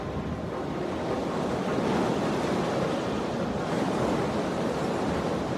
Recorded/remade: recorded